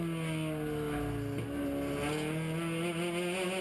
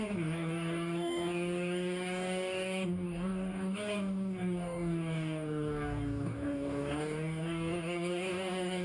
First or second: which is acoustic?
first